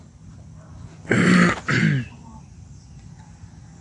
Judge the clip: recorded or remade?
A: recorded